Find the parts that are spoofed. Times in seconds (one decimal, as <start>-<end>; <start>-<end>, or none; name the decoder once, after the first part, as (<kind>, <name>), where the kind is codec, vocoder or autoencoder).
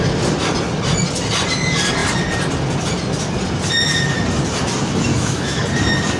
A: 5.1-5.6 (autoencoder, DAC-VAE)